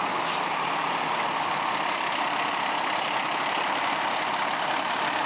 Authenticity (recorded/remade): remade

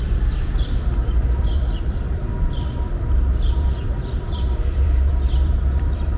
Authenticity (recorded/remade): remade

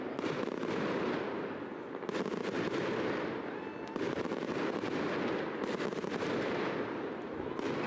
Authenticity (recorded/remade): recorded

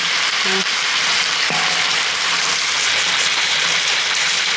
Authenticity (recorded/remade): remade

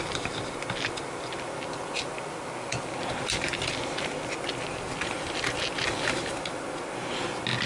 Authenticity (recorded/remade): recorded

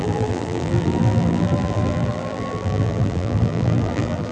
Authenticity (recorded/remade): remade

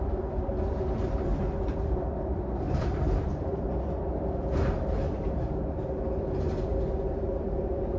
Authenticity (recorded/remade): remade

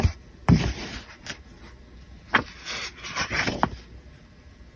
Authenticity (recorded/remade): remade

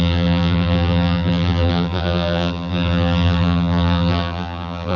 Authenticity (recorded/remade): remade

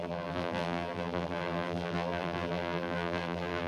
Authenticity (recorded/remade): remade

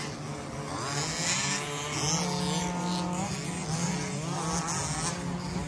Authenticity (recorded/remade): recorded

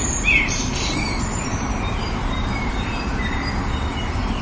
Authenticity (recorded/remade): remade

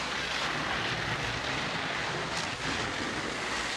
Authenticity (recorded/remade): recorded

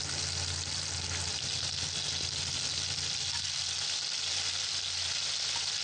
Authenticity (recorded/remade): recorded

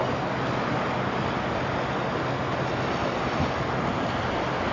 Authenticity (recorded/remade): recorded